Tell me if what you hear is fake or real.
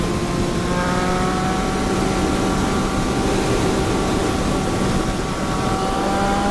real